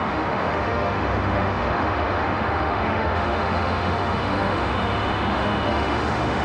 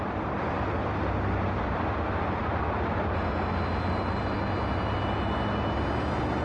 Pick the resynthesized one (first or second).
first